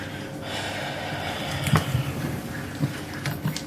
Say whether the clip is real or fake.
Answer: real